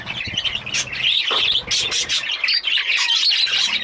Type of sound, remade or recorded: recorded